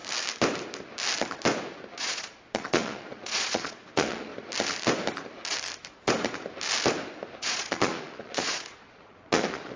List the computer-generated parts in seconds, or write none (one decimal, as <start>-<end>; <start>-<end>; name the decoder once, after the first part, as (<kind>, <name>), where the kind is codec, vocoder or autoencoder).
1.9-4.3 (vocoder, Vocos); 7.4-9.8